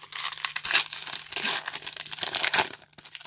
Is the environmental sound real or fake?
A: real